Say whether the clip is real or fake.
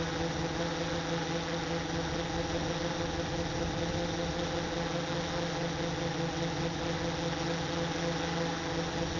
real